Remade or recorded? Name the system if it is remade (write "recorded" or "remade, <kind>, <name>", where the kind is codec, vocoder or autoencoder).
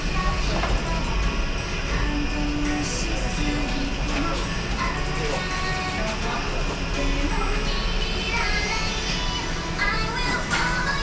recorded